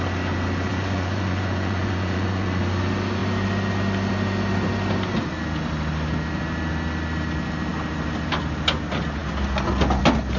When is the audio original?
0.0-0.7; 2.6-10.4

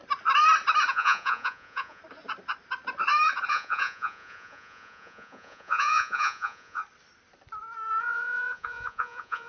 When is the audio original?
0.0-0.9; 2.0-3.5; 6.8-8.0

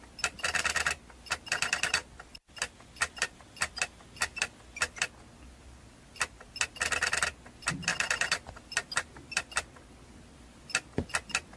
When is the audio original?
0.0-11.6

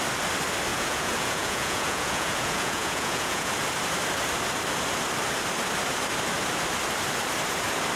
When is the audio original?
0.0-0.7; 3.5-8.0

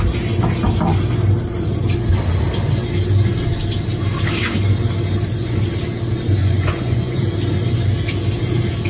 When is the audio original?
0.0-6.4; 7.2-8.9

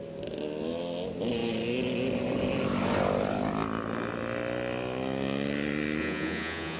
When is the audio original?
0.0-6.0